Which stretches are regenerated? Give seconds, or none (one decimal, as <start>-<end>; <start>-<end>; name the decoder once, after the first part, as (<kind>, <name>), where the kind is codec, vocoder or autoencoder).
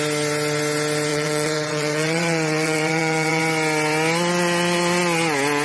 1.1-3.4 (vocoder, WaveNeXt)